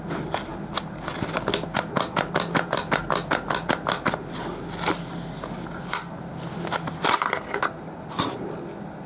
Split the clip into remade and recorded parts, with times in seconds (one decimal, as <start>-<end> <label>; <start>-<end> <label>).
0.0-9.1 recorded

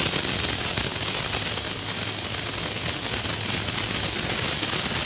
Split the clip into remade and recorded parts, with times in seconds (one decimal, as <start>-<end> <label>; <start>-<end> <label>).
0.0-5.1 recorded

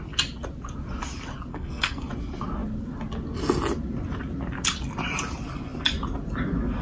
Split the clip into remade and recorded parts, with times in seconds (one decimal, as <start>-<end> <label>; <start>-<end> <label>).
0.0-1.5 recorded; 1.5-2.1 remade; 2.1-6.8 recorded

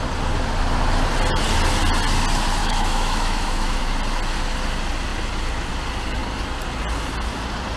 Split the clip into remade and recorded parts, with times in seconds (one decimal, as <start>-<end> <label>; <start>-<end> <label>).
0.0-2.6 recorded; 2.6-3.8 remade; 3.8-7.8 recorded